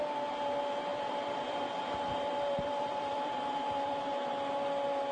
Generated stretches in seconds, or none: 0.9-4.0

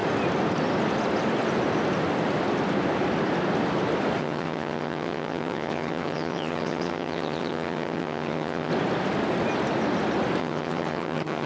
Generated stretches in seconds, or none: 4.2-8.7; 10.4-11.5

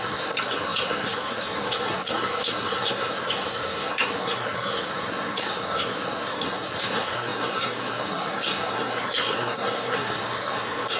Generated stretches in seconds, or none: 0.0-11.0

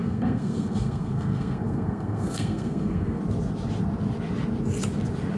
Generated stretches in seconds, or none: 0.0-3.2